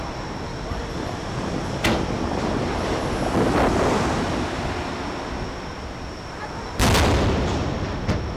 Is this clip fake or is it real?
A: real